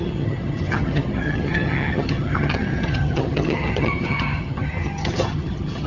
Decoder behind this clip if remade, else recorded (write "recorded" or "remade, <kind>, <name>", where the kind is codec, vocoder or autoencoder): remade, vocoder, HiFi-GAN